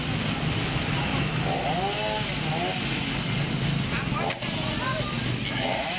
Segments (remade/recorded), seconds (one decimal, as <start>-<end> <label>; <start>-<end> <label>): 0.0-6.0 recorded